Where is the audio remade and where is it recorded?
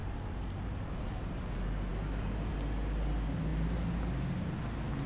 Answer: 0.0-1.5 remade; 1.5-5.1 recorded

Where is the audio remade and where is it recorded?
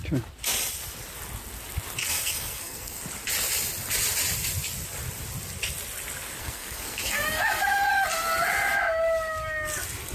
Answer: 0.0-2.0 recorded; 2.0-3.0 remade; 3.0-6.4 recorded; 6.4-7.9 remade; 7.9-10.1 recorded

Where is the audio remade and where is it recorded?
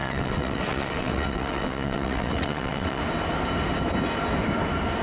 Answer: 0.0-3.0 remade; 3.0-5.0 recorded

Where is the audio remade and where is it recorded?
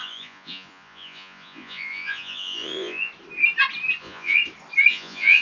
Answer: 0.0-3.1 remade; 3.1-4.0 recorded; 4.0-4.4 remade; 4.4-4.9 recorded; 4.9-5.4 remade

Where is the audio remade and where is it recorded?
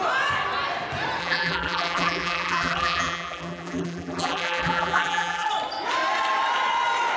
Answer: 0.0-1.2 recorded; 1.2-5.5 remade; 5.5-7.2 recorded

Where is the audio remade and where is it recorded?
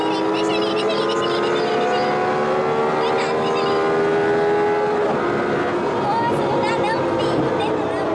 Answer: 0.0-8.1 recorded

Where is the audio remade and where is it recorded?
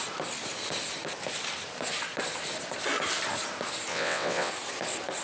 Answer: 0.0-3.9 recorded; 3.9-4.5 remade; 4.5-5.2 recorded